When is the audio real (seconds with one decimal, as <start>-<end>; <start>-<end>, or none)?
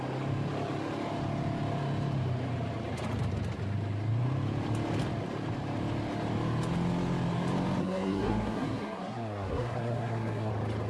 0.0-7.8; 10.5-10.9